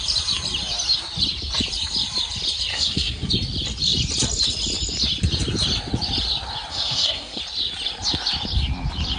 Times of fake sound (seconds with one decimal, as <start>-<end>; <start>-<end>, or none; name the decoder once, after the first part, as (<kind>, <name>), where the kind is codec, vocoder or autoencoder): 2.7-3.3 (codec, SNAC); 6.7-7.4